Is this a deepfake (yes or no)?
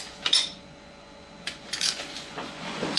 yes